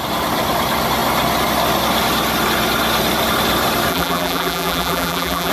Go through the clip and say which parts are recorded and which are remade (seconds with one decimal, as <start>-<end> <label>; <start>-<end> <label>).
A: 0.0-3.9 recorded; 3.9-5.5 remade